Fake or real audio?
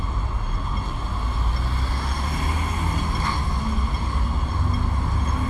real